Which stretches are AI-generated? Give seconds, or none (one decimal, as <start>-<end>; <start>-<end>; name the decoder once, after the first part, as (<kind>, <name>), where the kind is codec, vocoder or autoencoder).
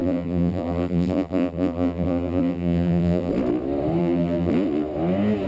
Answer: 0.0-3.3 (vocoder, BigVGAN v2); 4.0-4.5